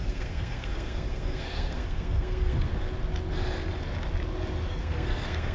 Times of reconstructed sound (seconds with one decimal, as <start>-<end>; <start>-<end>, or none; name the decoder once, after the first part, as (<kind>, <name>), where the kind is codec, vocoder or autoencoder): 0.0-2.7 (codec, SNAC); 4.7-5.5